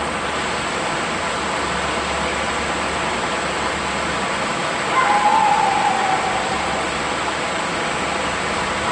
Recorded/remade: recorded